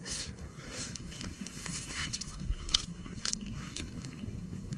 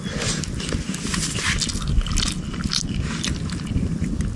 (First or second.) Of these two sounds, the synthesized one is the first